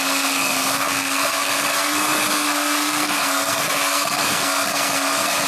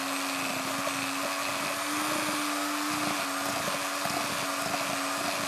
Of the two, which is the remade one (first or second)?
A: first